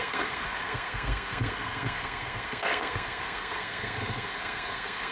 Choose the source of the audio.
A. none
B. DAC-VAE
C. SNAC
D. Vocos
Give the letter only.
C